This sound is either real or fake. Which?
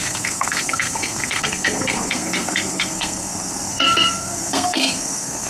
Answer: fake